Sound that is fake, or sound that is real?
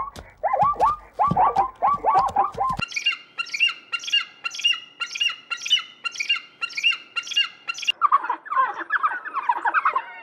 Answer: real